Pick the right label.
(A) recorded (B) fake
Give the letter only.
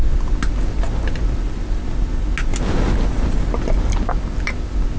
A